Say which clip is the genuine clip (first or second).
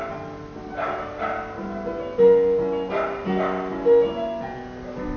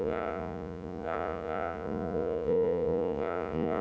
first